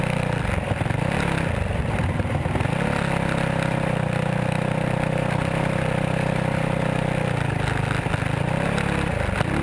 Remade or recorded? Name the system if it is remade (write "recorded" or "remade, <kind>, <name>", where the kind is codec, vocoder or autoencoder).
recorded